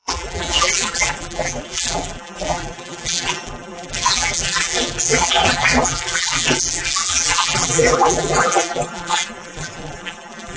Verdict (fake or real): fake